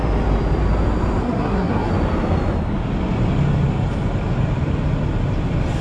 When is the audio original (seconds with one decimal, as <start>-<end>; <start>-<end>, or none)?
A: 0.0-1.2; 1.9-5.8